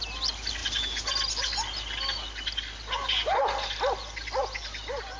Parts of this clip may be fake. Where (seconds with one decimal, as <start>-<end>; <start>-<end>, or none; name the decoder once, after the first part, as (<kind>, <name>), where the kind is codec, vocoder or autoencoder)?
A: none

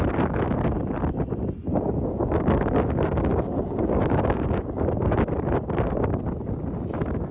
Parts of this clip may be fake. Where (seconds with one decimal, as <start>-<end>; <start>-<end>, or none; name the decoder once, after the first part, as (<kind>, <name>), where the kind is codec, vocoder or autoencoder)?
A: 1.7-5.2 (codec, DAC)